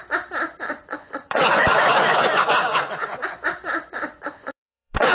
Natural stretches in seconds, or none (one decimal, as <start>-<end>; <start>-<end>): 0.0-0.7